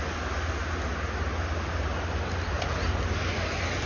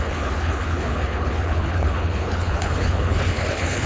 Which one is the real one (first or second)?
first